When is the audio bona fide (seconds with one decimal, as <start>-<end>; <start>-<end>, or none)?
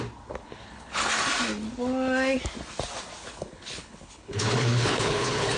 0.0-0.4; 1.1-3.2